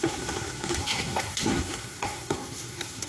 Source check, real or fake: fake